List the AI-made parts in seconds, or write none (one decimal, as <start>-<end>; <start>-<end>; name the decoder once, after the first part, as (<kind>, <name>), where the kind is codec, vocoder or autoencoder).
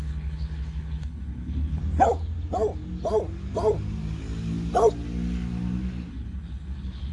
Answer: 0.0-1.8 (codec, HILCodec); 6.1-7.1